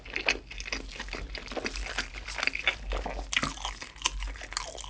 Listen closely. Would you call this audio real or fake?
real